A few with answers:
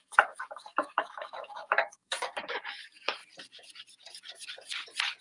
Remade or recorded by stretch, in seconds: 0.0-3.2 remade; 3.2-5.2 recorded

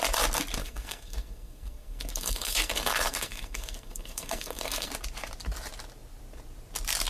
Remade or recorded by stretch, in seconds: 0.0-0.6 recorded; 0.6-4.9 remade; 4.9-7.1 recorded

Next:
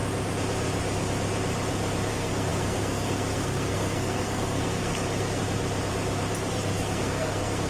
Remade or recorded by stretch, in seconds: 0.0-2.1 recorded; 2.1-5.4 remade; 5.4-6.5 recorded; 6.5-7.7 remade

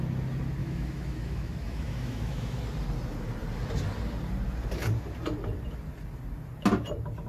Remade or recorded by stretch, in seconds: 0.0-0.6 recorded; 0.6-2.6 remade; 2.6-7.3 recorded